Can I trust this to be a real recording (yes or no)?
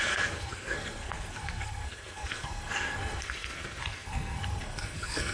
no